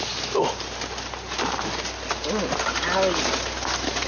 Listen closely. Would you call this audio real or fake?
real